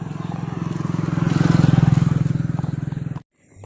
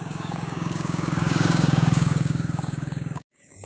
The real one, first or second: first